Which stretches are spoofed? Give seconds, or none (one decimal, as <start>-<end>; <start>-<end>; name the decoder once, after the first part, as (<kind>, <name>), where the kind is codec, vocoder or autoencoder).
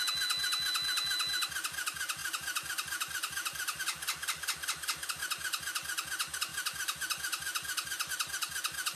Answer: 2.2-3.8 (vocoder, BigVGAN v2); 6.5-8.1